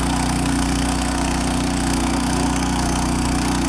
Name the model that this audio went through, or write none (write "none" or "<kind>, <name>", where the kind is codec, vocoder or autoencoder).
codec, SNAC